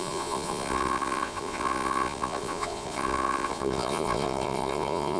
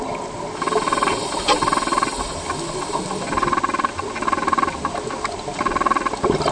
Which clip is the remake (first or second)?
first